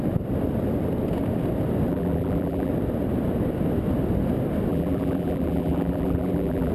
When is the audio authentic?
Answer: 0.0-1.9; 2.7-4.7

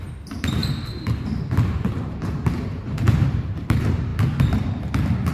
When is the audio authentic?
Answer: 4.1-5.3

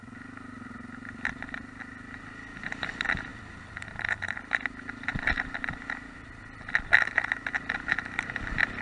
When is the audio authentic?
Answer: none

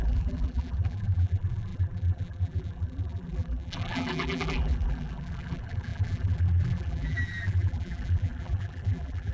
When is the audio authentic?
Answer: none

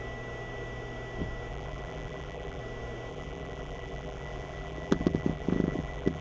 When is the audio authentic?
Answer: 0.0-1.5; 2.6-3.1

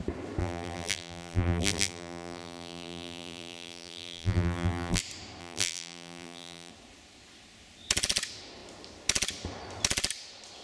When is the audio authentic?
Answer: 0.0-0.4; 5.0-5.4; 6.7-10.6

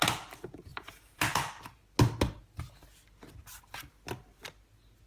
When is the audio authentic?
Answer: 0.0-0.7; 1.8-5.1